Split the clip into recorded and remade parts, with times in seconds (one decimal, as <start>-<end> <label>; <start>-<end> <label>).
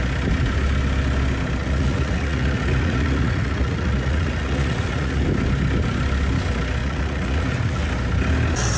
0.0-1.6 recorded; 1.6-5.2 remade; 5.2-6.8 recorded; 6.8-7.9 remade; 7.9-8.8 recorded